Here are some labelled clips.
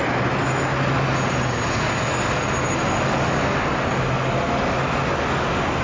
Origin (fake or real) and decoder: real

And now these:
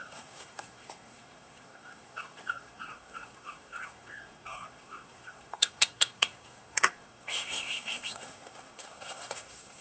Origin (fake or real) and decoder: fake, codec, SNAC